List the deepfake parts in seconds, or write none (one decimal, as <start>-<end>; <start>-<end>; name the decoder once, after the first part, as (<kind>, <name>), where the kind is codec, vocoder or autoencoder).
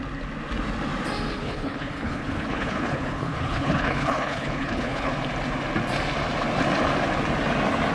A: 1.4-5.1 (codec, HILCodec)